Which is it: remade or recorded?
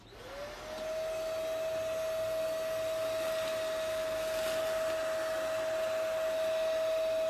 recorded